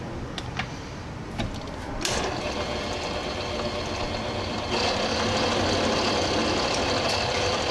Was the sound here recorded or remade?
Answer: recorded